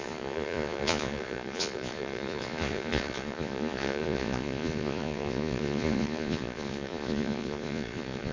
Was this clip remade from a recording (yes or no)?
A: yes